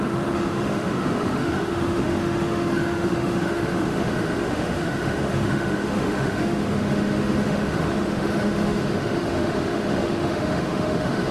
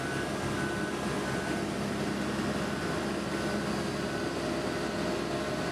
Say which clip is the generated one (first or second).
first